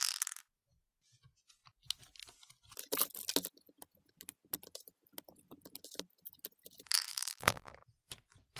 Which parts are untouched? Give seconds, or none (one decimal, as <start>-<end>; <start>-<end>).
0.0-7.1; 7.7-8.6